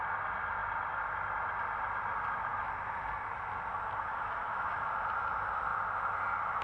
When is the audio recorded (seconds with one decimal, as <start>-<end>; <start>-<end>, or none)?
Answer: 0.0-4.1; 4.9-6.6